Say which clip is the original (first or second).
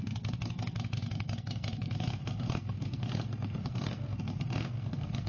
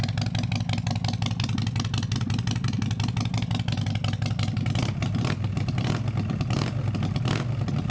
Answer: second